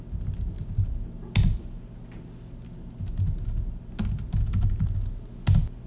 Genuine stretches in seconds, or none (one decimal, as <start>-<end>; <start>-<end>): 0.0-5.9